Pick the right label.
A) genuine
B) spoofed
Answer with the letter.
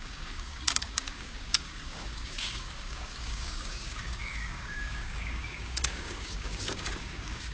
B